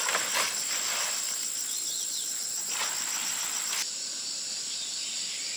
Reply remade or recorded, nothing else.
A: recorded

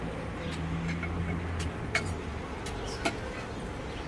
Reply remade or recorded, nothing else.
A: recorded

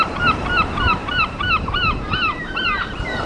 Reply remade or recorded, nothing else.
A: remade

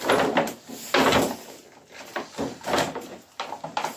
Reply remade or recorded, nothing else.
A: recorded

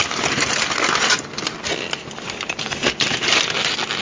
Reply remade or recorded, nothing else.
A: recorded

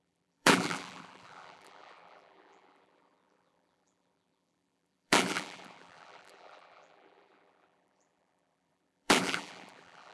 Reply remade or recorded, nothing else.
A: remade